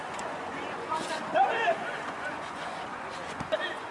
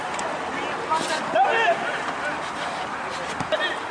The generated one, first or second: first